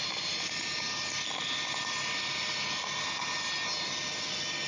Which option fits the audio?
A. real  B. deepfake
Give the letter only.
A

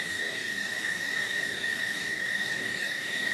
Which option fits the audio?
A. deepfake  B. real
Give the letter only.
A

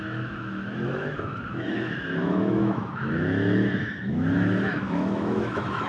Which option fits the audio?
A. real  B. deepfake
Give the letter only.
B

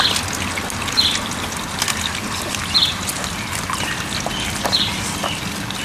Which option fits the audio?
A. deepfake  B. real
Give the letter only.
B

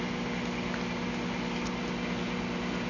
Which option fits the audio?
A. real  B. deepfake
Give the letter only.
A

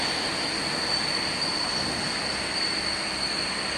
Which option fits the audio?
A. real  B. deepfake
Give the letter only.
A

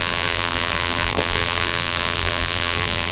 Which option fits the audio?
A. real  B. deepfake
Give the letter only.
B